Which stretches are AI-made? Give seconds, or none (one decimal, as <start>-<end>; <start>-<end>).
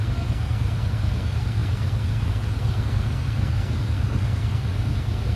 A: 0.0-5.4